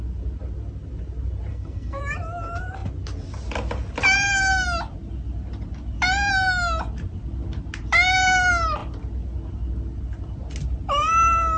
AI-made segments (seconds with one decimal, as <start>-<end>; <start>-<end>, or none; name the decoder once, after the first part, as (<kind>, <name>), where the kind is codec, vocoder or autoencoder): 1.5-2.0 (codec, SNAC)